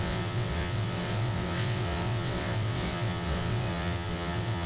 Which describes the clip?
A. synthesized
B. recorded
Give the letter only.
A